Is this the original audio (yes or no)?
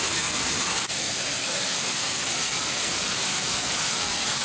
no